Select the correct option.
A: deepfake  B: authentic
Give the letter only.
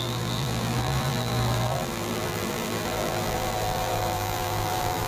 A